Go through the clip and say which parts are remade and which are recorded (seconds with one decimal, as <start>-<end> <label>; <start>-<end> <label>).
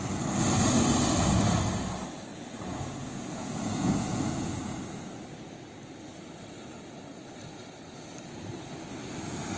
0.0-2.3 recorded; 2.3-4.6 remade; 4.6-9.6 recorded